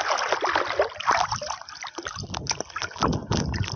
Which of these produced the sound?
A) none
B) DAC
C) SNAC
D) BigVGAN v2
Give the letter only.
A